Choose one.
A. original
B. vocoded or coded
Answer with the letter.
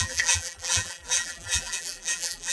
B